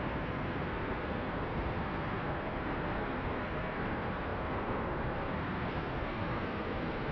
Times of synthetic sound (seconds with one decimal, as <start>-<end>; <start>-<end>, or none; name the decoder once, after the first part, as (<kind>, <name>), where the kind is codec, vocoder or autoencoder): 0.0-7.1 (codec, SNAC)

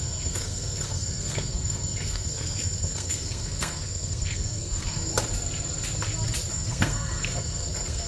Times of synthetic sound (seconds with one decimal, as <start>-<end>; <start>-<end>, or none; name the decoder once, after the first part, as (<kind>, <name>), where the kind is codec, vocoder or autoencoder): 0.0-5.1 (codec, SNAC); 6.5-8.1

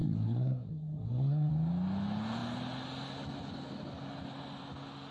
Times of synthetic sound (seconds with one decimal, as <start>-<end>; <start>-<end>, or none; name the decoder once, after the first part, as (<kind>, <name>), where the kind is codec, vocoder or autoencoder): 0.0-1.5 (codec, SNAC)

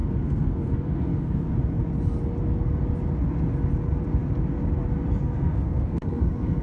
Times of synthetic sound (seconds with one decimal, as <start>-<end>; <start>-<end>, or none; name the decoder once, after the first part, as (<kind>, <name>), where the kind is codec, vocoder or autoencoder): 0.0-1.5 (codec, SNAC); 5.2-6.6

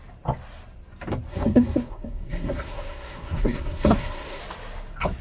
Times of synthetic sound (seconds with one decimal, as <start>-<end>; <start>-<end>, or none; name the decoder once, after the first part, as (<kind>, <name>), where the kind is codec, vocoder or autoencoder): 1.3-4.4 (codec, SNAC)

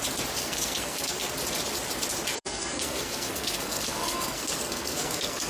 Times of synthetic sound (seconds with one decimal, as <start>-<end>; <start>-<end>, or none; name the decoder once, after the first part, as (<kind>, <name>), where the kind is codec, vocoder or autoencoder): 0.4-1.3 (codec, SNAC); 2.3-5.5